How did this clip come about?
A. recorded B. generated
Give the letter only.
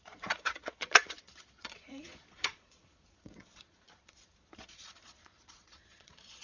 B